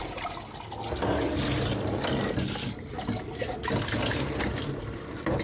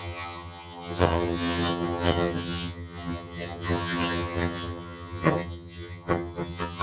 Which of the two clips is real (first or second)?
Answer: first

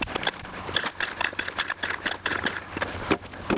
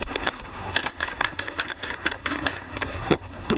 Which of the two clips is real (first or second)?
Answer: first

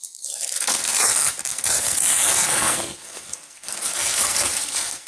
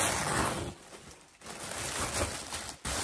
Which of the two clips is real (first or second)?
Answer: second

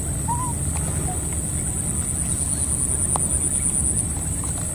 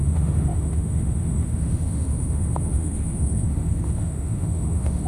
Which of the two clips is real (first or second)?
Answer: first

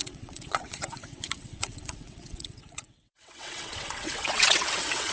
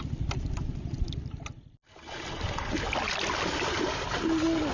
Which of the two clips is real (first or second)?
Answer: second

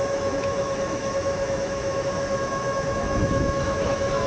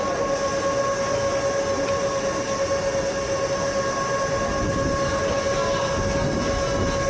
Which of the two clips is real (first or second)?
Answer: second